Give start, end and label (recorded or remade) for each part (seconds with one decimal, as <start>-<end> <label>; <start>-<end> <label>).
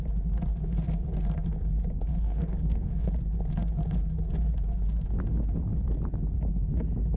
0.0-2.1 recorded; 2.1-3.1 remade; 3.1-7.2 recorded